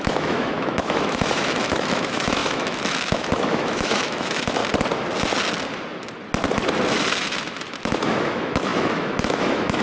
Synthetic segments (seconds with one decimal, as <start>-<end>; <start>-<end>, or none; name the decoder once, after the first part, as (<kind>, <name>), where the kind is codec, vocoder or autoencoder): 0.0-4.6 (autoencoder, DAC-VAE); 7.8-9.8

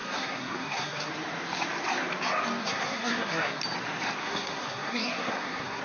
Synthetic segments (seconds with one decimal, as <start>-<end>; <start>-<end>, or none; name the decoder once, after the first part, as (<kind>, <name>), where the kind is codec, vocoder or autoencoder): 0.0-1.1 (codec, SNAC); 2.6-3.6; 4.2-5.8

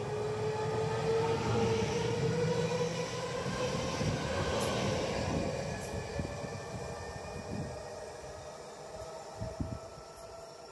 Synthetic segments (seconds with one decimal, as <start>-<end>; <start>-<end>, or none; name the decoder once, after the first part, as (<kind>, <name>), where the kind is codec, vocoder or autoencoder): 9.9-10.7 (vocoder, BigVGAN v2)

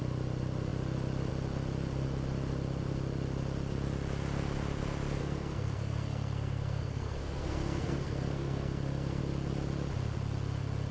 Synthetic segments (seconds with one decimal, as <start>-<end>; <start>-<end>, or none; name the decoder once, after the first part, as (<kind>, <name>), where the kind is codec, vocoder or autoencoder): 5.2-9.2 (codec, SNAC)

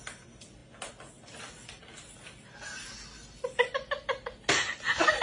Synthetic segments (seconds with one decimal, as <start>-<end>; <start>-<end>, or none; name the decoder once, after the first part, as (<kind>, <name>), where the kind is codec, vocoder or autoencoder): none

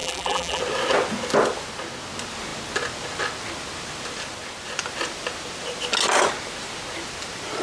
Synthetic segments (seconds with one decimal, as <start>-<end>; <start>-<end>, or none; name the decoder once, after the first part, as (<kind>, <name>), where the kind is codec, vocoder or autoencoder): 0.0-0.6 (vocoder, BigVGAN v2)

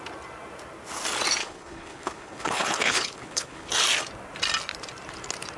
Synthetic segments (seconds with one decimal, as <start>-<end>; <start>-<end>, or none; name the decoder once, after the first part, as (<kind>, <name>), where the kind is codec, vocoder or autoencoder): 1.4-3.7 (codec, HILCodec)

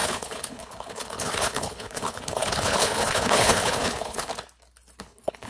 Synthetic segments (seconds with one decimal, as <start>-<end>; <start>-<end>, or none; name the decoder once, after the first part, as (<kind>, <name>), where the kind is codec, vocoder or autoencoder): 0.0-4.3 (codec, HILCodec); 5.0-5.5